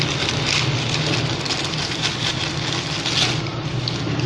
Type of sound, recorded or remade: recorded